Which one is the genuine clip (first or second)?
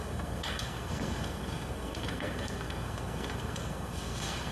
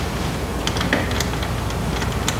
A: second